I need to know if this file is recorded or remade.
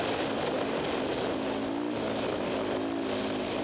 recorded